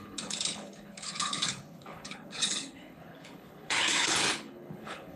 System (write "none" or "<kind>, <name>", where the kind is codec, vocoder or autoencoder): codec, HILCodec